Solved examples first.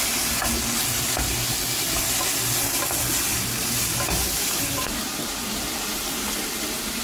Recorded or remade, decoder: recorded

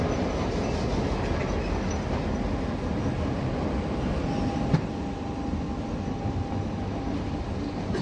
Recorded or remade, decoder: recorded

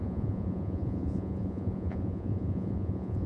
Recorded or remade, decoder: remade, vocoder, Vocos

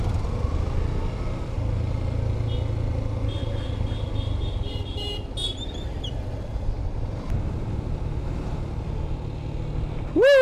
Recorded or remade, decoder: recorded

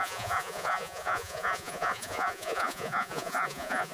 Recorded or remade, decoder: remade, vocoder, Vocos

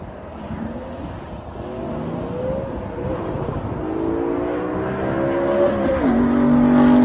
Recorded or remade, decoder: recorded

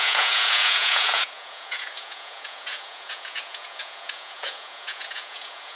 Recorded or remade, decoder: remade, vocoder, Vocos